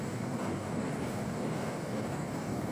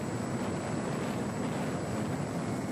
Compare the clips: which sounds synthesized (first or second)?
first